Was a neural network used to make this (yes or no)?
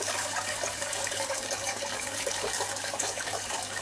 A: yes